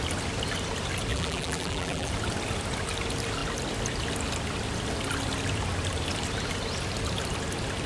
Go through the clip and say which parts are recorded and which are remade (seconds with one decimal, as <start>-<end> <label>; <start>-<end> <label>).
0.0-1.1 recorded; 1.1-2.1 remade; 2.1-7.9 recorded